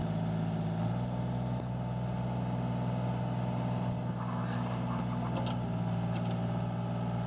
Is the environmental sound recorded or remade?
recorded